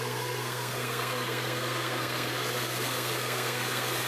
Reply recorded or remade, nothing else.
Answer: remade